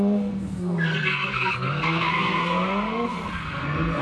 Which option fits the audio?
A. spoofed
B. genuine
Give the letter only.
A